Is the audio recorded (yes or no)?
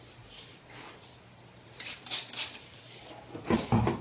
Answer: yes